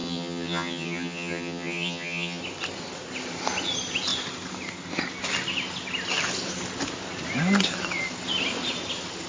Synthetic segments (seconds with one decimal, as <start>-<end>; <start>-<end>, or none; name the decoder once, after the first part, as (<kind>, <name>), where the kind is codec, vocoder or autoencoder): 0.0-2.4 (vocoder, HiFi-GAN)